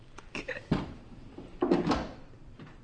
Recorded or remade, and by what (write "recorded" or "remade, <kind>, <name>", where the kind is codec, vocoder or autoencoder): remade, vocoder, BigVGAN v2